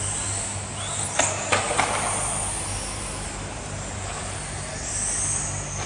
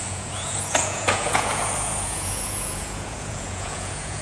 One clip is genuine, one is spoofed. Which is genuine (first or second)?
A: first